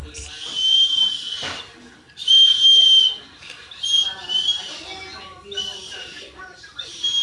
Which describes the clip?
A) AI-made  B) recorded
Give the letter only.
B